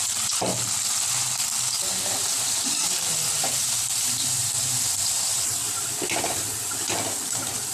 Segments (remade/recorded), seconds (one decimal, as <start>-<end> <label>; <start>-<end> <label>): 0.0-0.5 recorded; 0.5-4.5 remade; 4.5-7.7 recorded